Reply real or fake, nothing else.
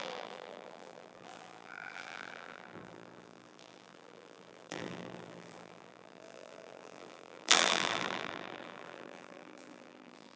fake